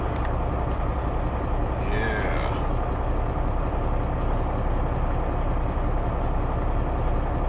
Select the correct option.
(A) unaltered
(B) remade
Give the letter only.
A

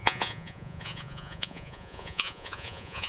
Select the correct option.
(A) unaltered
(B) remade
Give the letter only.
B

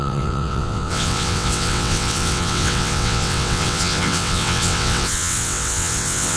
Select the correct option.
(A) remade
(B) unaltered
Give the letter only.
A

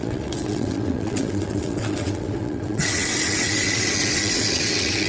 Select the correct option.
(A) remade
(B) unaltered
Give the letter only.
A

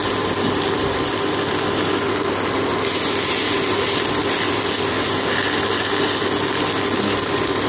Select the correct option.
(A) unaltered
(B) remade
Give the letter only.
A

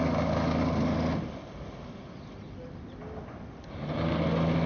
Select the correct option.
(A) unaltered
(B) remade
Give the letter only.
A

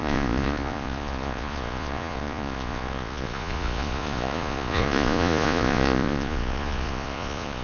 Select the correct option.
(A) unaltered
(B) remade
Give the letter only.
B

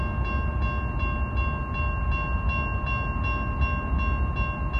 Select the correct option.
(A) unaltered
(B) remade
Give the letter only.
A